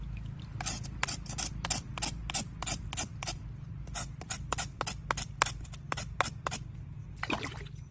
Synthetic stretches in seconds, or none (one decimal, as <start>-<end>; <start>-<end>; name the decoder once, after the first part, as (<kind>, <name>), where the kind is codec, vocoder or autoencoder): none